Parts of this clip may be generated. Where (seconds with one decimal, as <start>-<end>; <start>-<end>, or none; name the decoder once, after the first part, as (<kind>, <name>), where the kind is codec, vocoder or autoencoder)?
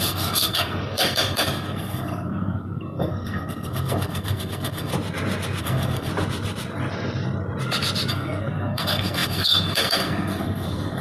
0.0-4.9 (codec, SNAC); 5.6-6.1; 8.1-11.0